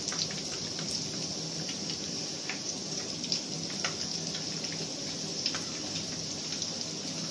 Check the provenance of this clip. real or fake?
real